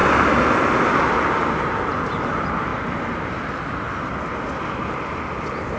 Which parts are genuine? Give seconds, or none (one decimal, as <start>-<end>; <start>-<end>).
0.0-5.8

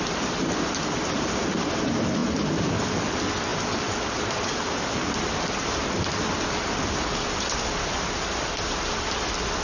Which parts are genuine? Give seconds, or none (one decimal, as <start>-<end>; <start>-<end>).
0.0-9.6

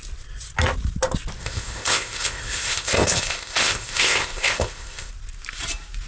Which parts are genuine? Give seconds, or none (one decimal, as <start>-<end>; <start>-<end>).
0.0-1.4; 5.1-6.1

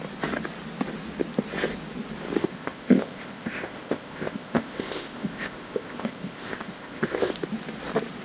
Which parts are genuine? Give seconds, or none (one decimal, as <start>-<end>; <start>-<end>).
0.0-2.4; 7.3-8.2